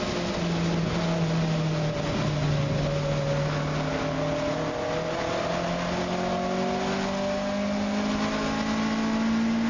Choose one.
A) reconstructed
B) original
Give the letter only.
B